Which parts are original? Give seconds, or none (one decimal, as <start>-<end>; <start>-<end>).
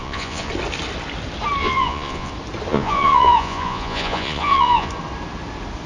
0.5-1.6; 2.3-2.7; 4.9-5.9